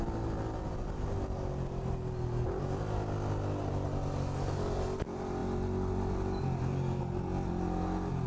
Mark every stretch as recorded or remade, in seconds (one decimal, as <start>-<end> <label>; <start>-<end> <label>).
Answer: 0.0-8.3 recorded